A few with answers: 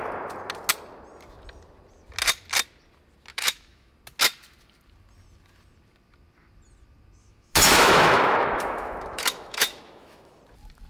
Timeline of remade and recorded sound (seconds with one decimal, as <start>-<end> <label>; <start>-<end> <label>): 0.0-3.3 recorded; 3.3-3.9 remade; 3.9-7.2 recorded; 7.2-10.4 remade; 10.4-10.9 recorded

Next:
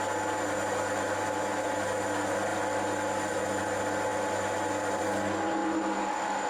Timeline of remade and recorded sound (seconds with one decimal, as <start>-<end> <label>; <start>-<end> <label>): 0.0-6.5 recorded

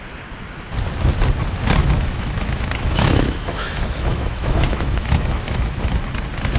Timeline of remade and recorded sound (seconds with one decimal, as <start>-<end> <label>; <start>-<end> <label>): 0.0-1.8 recorded; 1.8-5.8 remade; 5.8-6.6 recorded